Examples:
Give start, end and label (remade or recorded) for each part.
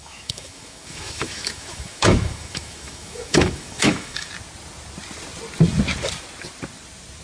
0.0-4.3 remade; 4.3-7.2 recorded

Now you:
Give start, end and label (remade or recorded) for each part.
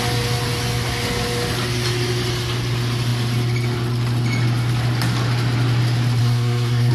0.0-6.2 recorded; 6.2-6.9 remade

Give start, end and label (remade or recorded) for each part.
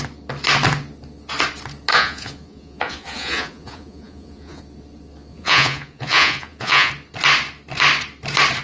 0.0-1.9 recorded; 1.9-4.6 remade; 4.6-5.3 recorded; 5.3-6.9 remade; 6.9-8.6 recorded